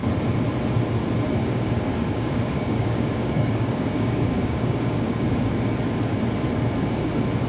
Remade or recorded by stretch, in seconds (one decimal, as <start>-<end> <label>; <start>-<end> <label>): 0.0-1.4 recorded; 1.4-5.5 remade; 5.5-7.5 recorded